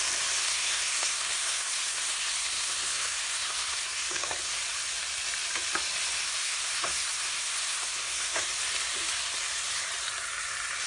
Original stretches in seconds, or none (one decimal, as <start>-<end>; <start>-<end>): 0.0-0.4; 4.5-6.2; 8.5-10.9